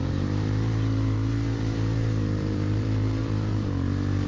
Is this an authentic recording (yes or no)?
no